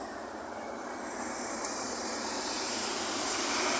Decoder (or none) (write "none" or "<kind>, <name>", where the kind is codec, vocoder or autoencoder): vocoder, BigVGAN v2